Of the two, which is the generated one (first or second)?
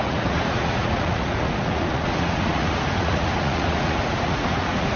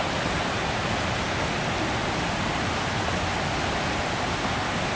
first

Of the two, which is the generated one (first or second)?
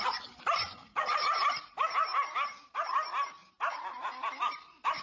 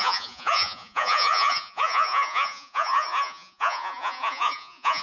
second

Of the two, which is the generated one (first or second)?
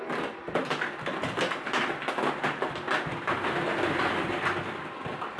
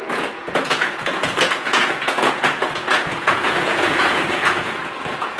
second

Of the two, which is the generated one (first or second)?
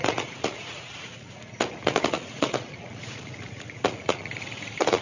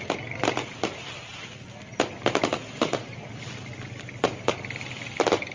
first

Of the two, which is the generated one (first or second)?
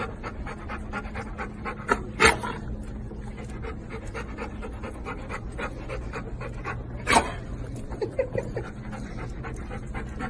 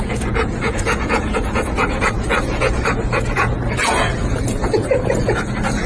second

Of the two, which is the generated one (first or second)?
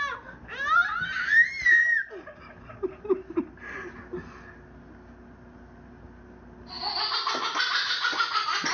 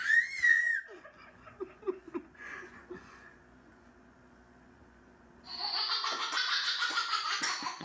second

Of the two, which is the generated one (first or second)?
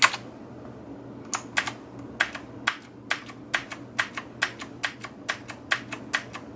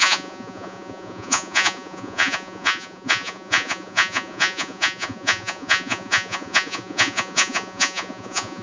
second